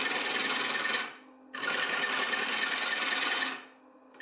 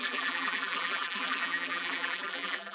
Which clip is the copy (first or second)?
second